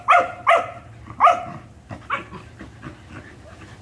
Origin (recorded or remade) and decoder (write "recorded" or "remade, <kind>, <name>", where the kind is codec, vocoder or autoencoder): recorded